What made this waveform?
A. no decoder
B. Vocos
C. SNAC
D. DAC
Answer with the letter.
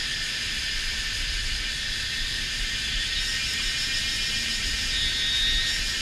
A